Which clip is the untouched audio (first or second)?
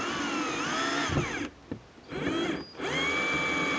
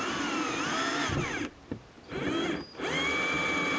first